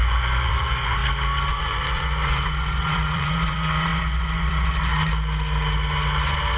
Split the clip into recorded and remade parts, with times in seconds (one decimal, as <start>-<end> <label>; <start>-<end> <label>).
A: 0.0-1.0 remade; 1.0-1.5 recorded; 1.5-4.9 remade; 4.9-6.6 recorded